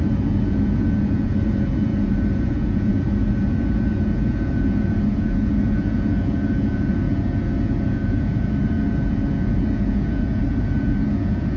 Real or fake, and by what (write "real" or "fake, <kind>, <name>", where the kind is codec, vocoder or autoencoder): fake, vocoder, Vocos